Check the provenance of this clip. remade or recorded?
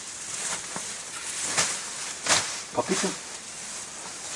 recorded